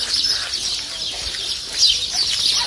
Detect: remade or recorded recorded